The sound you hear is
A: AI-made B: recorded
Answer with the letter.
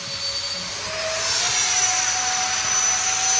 B